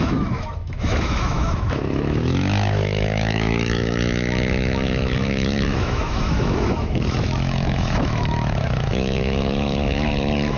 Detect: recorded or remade remade